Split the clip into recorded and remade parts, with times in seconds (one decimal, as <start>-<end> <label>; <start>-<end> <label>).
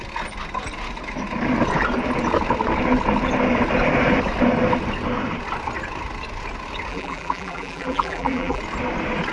0.0-6.9 recorded; 6.9-8.6 remade; 8.6-9.3 recorded